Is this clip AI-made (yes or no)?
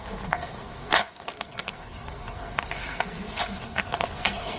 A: yes